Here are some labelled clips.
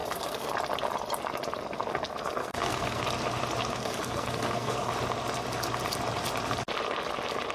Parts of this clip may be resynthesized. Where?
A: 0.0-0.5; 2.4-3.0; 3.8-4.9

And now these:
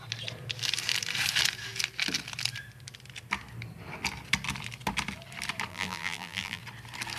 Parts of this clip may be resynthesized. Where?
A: 5.7-6.6